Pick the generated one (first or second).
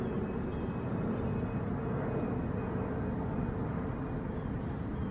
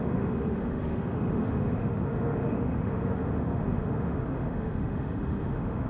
second